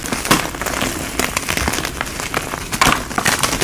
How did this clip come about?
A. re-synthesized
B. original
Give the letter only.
B